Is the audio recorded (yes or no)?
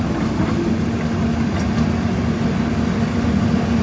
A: yes